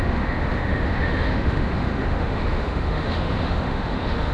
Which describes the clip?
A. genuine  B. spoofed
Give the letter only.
B